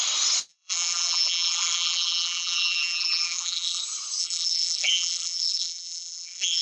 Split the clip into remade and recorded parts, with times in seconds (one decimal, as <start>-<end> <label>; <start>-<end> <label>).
0.0-0.5 recorded; 0.5-3.8 remade; 3.8-4.2 recorded; 4.2-6.6 remade

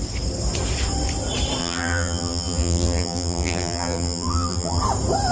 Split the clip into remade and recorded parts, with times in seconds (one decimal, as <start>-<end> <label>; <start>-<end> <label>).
0.0-1.6 recorded; 1.6-4.8 remade; 4.8-5.3 recorded

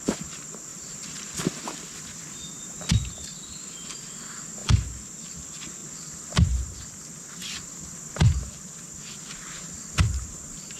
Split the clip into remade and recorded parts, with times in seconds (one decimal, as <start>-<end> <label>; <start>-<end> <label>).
0.0-0.7 recorded; 0.7-1.6 remade; 1.6-10.8 recorded

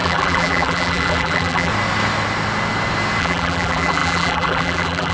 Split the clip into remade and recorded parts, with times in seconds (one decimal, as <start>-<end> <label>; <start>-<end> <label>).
0.0-1.7 remade; 1.7-3.2 recorded; 3.2-5.1 remade

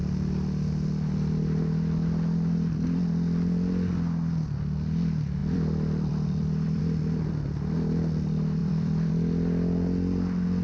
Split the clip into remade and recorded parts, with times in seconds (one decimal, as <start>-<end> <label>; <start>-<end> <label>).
0.0-5.4 recorded; 5.4-6.8 remade; 6.8-8.6 recorded; 8.6-9.1 remade; 9.1-10.6 recorded

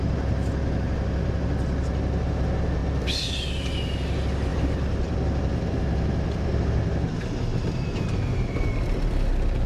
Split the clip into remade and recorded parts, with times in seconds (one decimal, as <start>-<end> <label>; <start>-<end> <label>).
0.0-2.8 recorded; 2.8-3.3 remade; 3.3-4.5 recorded; 4.5-7.2 remade; 7.2-9.7 recorded

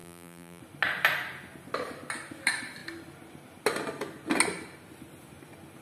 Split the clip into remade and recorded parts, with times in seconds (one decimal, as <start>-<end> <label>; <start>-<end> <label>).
0.0-0.6 remade; 0.6-5.8 recorded

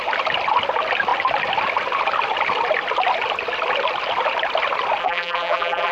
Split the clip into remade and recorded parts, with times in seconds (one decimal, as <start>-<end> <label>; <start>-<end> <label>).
0.0-5.0 recorded; 5.0-5.9 remade